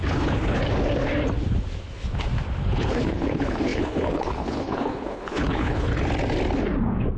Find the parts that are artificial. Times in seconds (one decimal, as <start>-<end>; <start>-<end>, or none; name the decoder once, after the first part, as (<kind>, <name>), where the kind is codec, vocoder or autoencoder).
0.0-0.6 (codec, HILCodec); 2.6-5.9